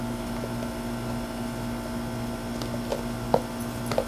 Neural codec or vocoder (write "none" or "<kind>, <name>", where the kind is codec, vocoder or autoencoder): none